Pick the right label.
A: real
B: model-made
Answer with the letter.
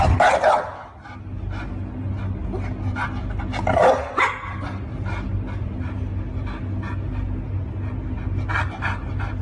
A